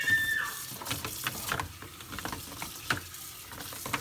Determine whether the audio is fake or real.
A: real